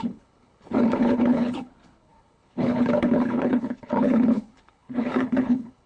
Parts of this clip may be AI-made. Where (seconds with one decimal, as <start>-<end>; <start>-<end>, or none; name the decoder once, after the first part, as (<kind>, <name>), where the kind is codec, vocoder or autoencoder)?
0.0-5.9 (codec, HILCodec)